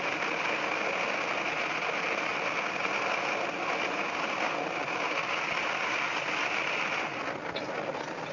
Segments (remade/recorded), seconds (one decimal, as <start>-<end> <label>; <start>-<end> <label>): 0.0-8.3 recorded